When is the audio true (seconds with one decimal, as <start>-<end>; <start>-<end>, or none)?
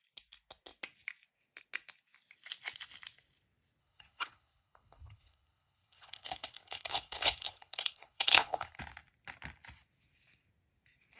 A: 0.0-3.8; 8.8-11.2